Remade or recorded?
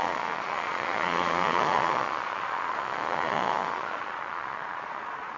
remade